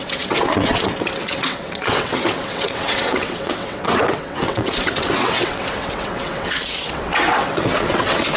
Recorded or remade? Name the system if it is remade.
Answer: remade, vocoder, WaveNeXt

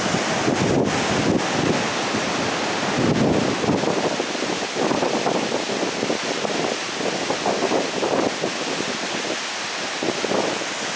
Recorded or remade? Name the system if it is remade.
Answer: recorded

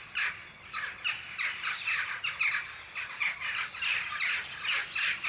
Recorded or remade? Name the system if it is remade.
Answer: recorded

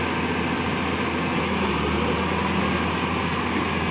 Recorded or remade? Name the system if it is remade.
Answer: recorded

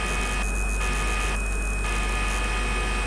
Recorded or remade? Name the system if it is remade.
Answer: recorded